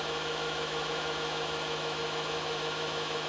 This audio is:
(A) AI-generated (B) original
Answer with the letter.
A